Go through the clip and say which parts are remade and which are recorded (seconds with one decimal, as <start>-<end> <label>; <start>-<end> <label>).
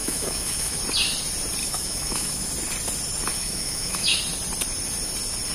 0.0-0.8 remade; 0.8-1.6 recorded; 1.6-2.5 remade; 2.5-3.3 recorded; 3.3-4.2 remade; 4.2-5.5 recorded